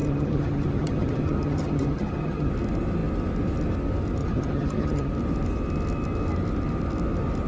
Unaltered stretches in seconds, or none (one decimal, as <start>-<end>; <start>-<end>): 2.5-4.2; 5.1-7.5